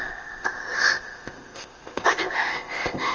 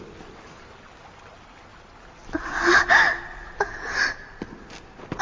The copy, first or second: first